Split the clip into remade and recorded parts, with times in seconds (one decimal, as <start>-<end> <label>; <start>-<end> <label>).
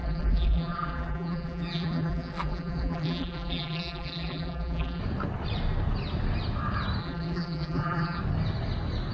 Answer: 0.0-5.0 remade; 5.0-7.0 recorded; 7.0-8.2 remade; 8.2-9.1 recorded